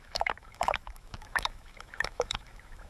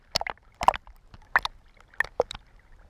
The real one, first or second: second